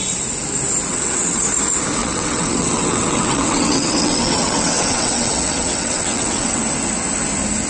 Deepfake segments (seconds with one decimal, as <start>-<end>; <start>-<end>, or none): 0.9-1.4; 2.0-6.6